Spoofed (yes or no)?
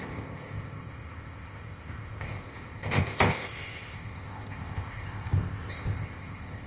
yes